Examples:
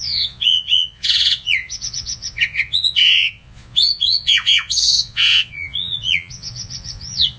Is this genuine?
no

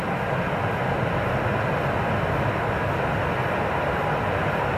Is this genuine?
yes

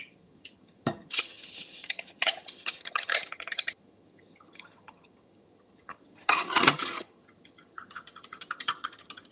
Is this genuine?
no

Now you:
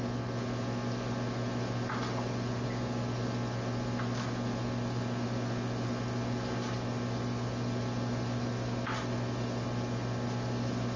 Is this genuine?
yes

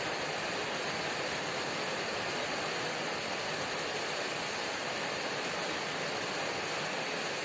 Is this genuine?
yes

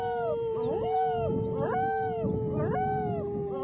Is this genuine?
yes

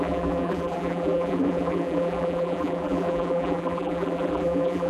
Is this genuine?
no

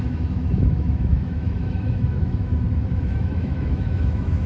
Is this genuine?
no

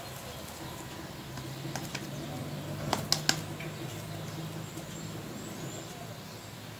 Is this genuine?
yes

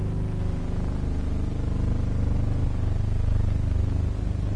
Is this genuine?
yes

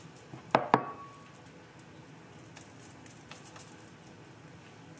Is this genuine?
yes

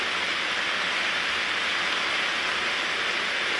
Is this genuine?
yes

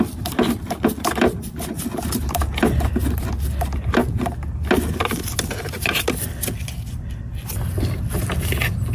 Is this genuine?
yes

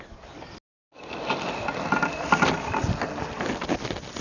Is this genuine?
yes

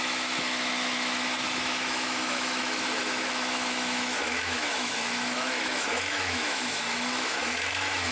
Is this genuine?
no